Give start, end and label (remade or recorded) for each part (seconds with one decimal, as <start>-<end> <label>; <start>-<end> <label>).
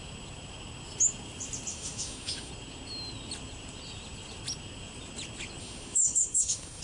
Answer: 0.0-1.7 recorded; 1.7-2.5 remade; 2.5-5.6 recorded; 5.6-6.8 remade